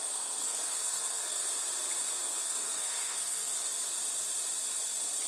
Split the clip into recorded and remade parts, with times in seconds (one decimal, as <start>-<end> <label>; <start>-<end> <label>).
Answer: 0.0-1.5 remade; 1.5-2.2 recorded; 2.2-3.7 remade; 3.7-5.3 recorded